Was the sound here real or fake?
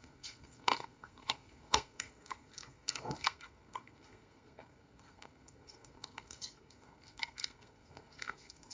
fake